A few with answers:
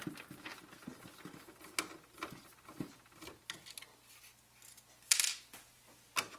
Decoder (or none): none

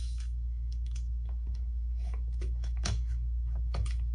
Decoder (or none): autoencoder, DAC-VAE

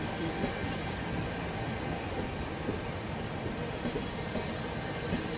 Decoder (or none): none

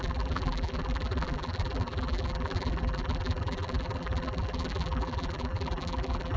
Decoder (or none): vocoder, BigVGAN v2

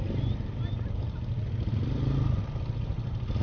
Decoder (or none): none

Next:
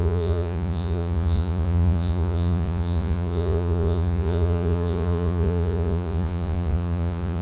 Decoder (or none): vocoder, Vocos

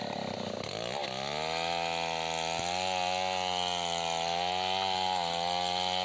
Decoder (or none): none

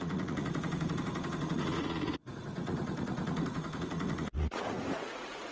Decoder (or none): vocoder, Vocos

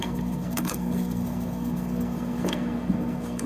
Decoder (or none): codec, SNAC